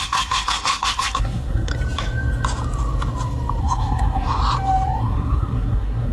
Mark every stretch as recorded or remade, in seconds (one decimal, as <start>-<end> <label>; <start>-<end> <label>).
0.0-1.7 remade; 1.7-3.6 recorded; 3.6-4.4 remade; 4.4-5.0 recorded; 5.0-6.1 remade